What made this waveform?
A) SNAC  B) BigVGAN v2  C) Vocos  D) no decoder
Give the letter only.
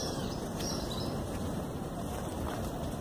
B